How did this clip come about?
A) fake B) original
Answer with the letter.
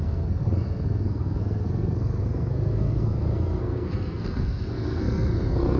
A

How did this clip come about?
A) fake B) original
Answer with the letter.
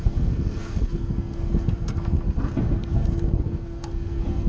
A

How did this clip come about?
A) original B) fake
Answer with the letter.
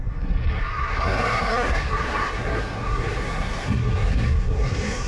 B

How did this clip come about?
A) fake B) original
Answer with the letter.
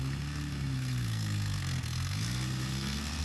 A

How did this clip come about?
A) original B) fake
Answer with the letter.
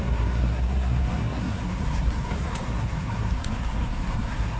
B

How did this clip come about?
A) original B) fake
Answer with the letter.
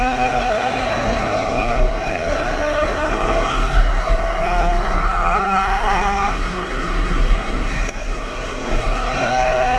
B